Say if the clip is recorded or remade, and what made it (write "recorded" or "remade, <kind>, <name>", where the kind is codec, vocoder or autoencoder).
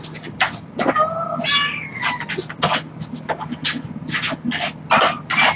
recorded